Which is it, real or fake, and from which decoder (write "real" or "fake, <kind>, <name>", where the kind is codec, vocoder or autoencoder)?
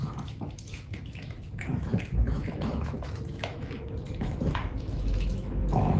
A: fake, autoencoder, DAC-VAE